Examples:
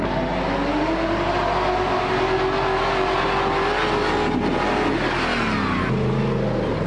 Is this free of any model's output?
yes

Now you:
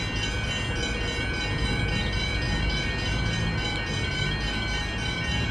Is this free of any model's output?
yes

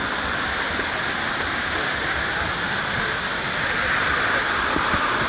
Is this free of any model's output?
yes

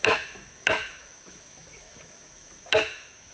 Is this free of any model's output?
no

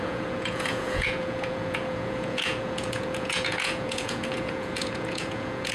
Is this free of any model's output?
no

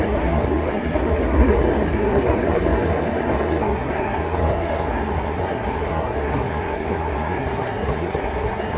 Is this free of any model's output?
no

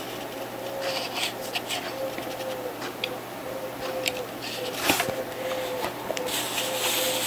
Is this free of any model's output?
no